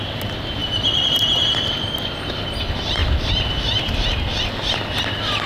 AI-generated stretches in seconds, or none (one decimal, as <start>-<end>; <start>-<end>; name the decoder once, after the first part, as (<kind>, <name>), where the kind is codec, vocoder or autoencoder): 0.6-1.2 (vocoder, BigVGAN v2); 3.0-3.9